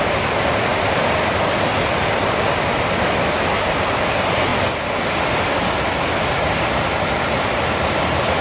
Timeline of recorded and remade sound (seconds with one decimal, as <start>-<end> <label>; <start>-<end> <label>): 0.0-8.4 recorded